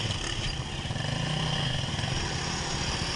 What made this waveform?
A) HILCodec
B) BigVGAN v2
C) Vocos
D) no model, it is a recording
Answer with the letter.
D